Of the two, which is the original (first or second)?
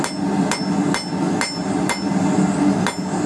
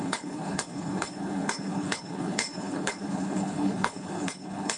first